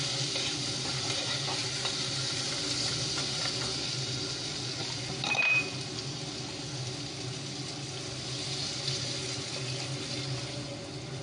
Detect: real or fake real